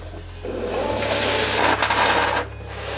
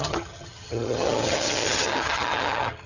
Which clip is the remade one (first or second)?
second